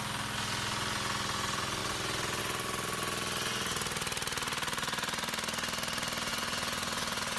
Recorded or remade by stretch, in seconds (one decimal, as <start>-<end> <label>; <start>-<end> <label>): 0.0-6.3 recorded; 6.3-7.4 remade